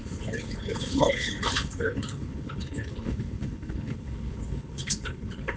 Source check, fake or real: fake